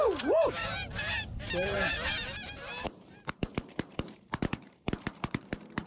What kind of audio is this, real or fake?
fake